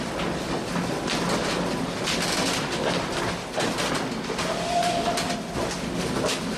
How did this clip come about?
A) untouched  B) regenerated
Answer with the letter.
A